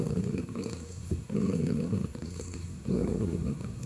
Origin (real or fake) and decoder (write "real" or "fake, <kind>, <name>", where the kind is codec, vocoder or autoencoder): fake, codec, SNAC